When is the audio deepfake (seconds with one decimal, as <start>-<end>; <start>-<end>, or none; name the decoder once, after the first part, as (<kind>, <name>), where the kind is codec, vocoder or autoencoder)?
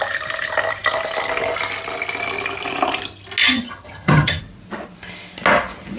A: 3.4-4.4 (vocoder, HiFi-GAN)